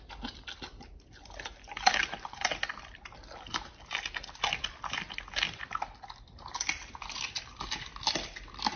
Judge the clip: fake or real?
real